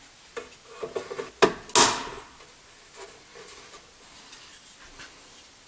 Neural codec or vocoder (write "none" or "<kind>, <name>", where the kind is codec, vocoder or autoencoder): none